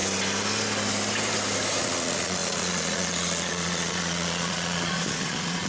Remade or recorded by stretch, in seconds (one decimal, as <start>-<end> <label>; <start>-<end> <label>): 0.0-1.8 recorded; 1.8-5.7 remade